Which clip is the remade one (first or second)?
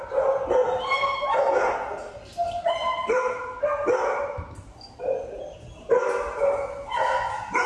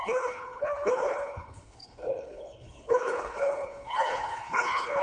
second